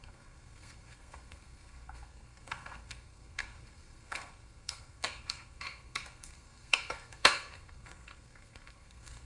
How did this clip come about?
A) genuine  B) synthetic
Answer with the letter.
B